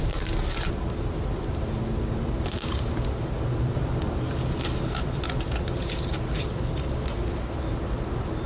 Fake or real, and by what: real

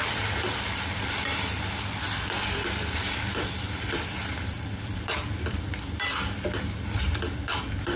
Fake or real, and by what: fake, vocoder, BigVGAN v2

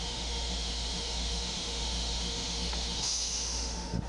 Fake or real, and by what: fake, autoencoder, DAC-VAE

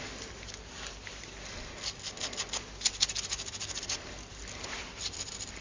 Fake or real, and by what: real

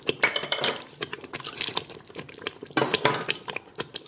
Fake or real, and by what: fake, vocoder, BigVGAN v2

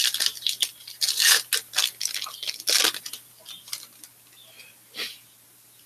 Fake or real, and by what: real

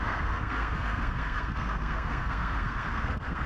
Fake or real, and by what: fake, codec, SNAC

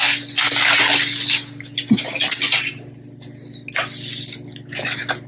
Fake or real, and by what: real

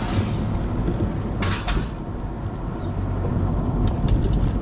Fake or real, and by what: real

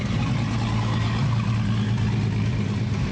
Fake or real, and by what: real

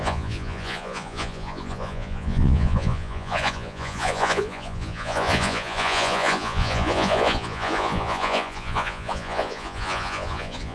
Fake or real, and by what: fake, vocoder, Vocos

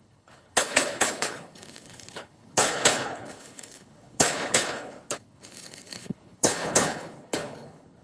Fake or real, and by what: fake, codec, HILCodec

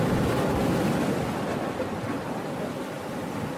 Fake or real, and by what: real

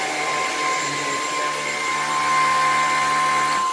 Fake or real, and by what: real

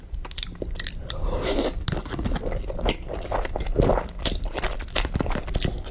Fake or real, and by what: real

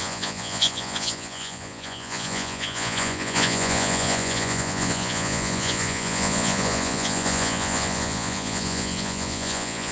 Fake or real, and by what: fake, vocoder, Vocos